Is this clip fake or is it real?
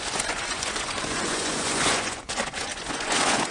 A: fake